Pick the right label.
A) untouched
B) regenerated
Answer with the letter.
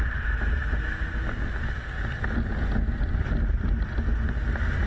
A